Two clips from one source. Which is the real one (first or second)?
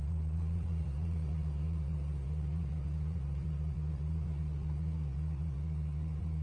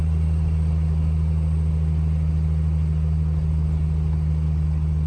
second